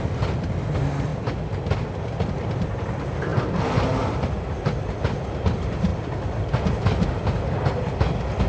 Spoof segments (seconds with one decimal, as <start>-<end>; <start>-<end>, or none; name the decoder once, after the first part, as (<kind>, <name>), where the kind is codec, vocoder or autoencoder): none